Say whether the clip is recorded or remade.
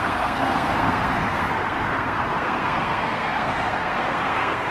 remade